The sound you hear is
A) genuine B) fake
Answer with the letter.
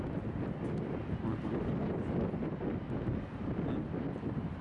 A